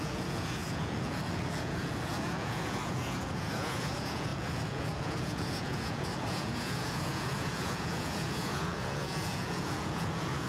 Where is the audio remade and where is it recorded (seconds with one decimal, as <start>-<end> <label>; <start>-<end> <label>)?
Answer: 0.0-10.5 remade